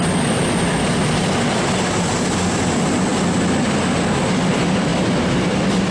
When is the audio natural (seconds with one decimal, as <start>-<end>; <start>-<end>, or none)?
0.0-5.9